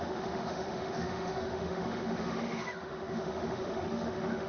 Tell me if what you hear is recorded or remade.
remade